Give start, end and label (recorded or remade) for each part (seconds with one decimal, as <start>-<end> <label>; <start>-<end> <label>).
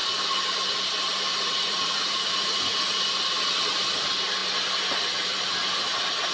0.0-1.3 recorded; 1.3-2.8 remade; 2.8-6.3 recorded